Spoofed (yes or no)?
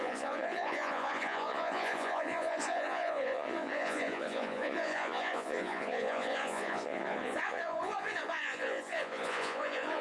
yes